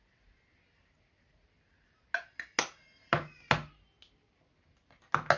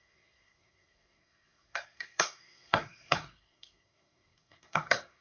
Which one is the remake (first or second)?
second